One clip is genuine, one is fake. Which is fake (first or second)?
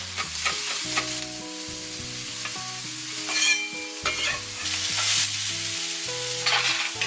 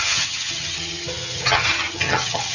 second